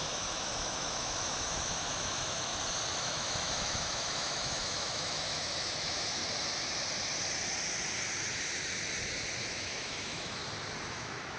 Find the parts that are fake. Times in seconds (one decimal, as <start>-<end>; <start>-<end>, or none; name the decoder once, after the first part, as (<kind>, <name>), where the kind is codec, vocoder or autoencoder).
0.0-2.5 (autoencoder, DAC-VAE); 3.0-6.2; 9.4-10.4; 10.9-11.4